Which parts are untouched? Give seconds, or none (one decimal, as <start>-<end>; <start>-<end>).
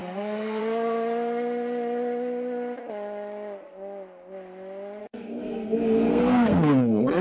0.6-5.0